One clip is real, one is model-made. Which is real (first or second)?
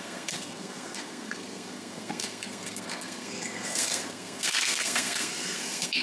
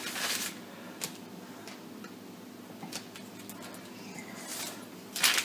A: second